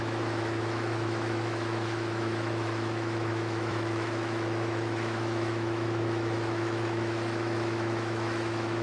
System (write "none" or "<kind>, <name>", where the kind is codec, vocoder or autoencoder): autoencoder, DAC-VAE